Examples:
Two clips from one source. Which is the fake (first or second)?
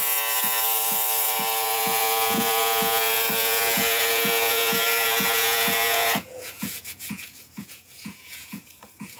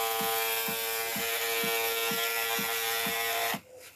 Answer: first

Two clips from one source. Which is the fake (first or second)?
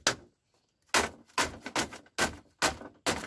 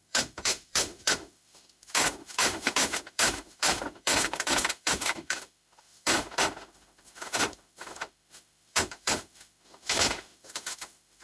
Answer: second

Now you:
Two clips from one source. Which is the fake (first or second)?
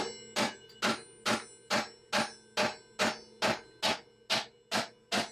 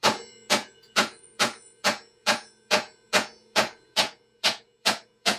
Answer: second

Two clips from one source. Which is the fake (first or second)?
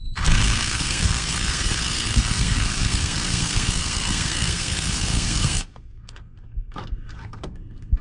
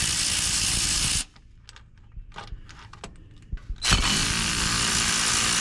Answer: first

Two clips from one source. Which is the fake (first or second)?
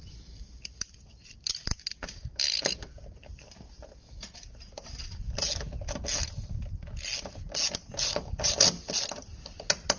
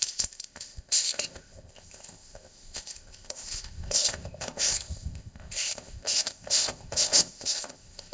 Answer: second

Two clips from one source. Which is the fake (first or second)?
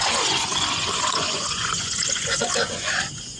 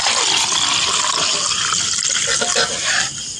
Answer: first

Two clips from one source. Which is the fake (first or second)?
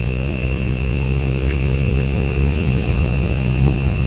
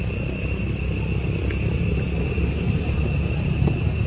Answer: first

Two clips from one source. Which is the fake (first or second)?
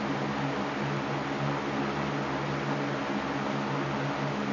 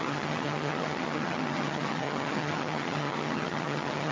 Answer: second